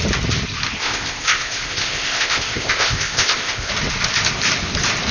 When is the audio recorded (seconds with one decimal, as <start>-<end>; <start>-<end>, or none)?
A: 0.0-0.8; 3.7-5.1